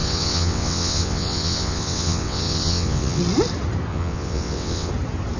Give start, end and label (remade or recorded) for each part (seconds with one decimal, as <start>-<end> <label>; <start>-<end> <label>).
0.0-3.2 remade; 3.2-3.9 recorded; 3.9-4.9 remade; 4.9-5.4 recorded